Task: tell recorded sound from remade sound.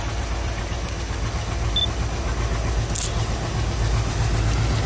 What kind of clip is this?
recorded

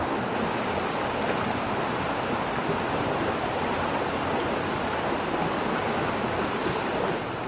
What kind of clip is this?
recorded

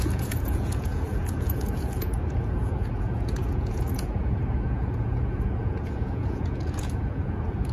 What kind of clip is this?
remade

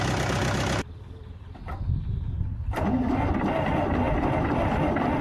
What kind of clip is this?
recorded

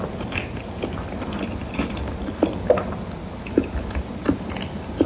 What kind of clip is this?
recorded